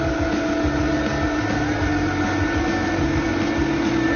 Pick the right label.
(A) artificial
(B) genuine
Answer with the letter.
B